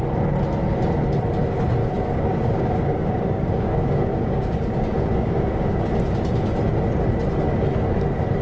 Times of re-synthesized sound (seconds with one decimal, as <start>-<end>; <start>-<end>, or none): 1.8-5.8